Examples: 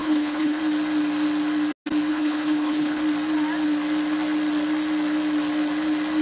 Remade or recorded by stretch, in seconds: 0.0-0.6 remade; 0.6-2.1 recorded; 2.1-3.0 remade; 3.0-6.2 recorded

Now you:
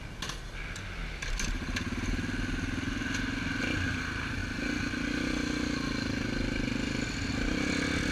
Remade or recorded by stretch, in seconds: 0.0-8.1 recorded

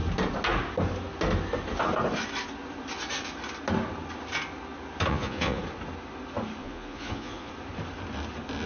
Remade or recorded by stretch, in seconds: 0.0-5.1 recorded; 5.1-5.6 remade; 5.6-6.6 recorded; 6.6-7.5 remade; 7.5-8.7 recorded

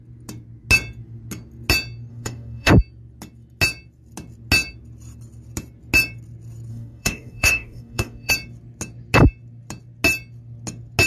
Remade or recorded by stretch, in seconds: 0.0-2.1 recorded; 2.1-2.7 remade; 2.7-6.7 recorded; 6.7-8.3 remade; 8.3-11.1 recorded

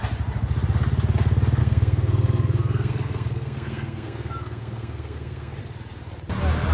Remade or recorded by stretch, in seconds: 0.0-1.6 recorded; 1.6-5.6 remade; 5.6-6.7 recorded

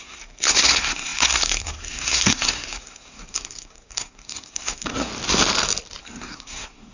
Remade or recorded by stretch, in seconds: 0.0-5.1 remade; 5.1-6.0 recorded; 6.0-6.9 remade

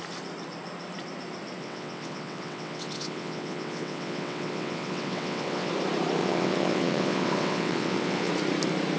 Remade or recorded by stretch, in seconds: 0.0-1.6 recorded; 1.6-5.7 remade; 5.7-6.2 recorded; 6.2-8.3 remade; 8.3-9.0 recorded